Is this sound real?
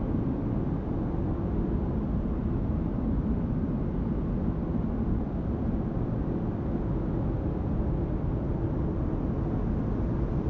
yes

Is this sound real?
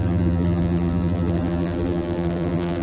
no